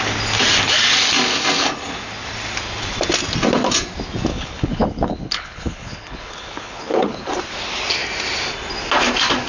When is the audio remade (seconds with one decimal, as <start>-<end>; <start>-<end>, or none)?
4.3-7.3